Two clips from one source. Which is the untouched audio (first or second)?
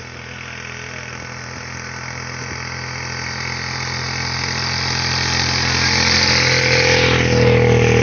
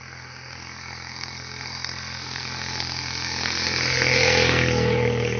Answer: first